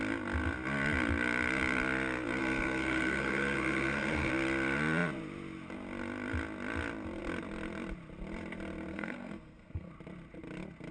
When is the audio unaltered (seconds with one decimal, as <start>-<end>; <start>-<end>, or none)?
0.0-2.4; 4.3-8.9; 9.9-10.9